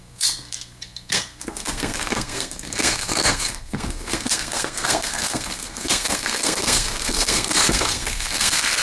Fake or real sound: fake